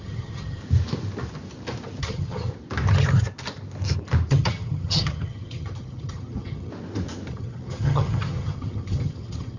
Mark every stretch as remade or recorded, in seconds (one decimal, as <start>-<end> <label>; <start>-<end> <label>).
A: 0.0-0.6 remade; 0.6-2.0 recorded; 2.0-2.5 remade; 2.5-4.3 recorded; 4.3-6.7 remade; 6.7-7.3 recorded; 7.3-9.6 remade